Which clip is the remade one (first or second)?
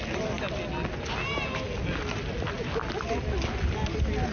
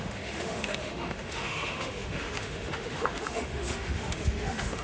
second